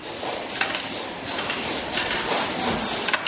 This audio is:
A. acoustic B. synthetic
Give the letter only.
B